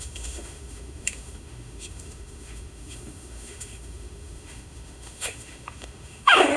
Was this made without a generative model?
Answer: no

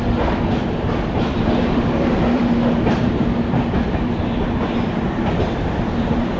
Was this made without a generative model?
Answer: no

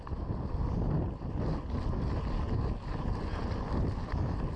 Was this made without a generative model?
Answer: yes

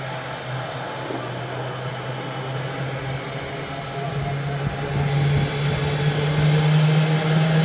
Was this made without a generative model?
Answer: yes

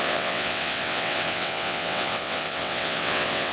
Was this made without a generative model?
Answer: no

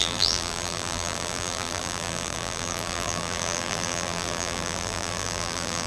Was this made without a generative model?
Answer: no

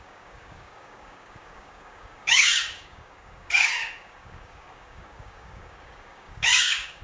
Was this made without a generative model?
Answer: no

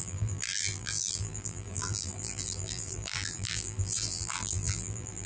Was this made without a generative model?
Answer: no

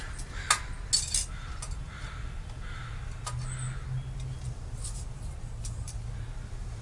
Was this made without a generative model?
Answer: yes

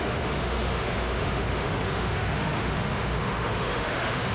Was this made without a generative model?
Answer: no